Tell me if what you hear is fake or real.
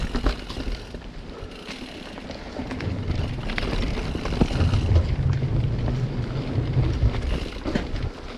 real